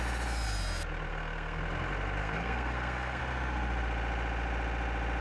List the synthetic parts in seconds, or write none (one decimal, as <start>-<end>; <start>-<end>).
1.1-1.6; 2.2-3.2